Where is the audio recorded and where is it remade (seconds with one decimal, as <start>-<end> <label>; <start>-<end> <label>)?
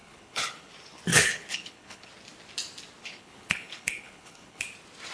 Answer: 0.0-0.7 remade; 0.7-1.1 recorded; 1.1-2.1 remade; 2.1-3.0 recorded; 3.0-4.6 remade; 4.6-5.1 recorded